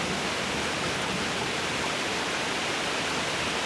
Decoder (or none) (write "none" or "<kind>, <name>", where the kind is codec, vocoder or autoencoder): none